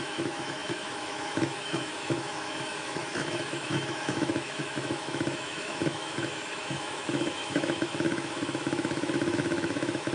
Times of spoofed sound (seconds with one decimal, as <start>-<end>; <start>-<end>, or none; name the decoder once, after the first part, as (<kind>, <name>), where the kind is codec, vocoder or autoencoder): 0.0-10.1 (autoencoder, DAC-VAE)